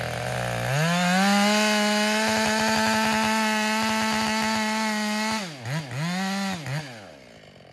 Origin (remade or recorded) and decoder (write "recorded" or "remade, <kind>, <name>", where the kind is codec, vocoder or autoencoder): recorded